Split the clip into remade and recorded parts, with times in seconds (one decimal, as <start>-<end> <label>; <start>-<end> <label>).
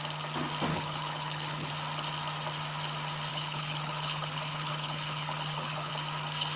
0.0-0.7 recorded; 0.7-1.7 remade; 1.7-3.3 recorded; 3.3-5.9 remade; 5.9-6.6 recorded